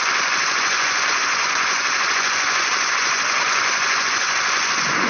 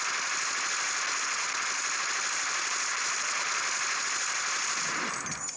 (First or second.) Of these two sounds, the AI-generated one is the first